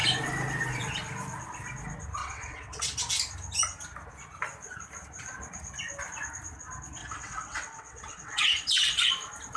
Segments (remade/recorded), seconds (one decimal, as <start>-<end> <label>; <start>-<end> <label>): 0.0-2.2 recorded; 2.2-2.8 remade; 2.8-7.0 recorded; 7.0-9.1 remade; 9.1-9.6 recorded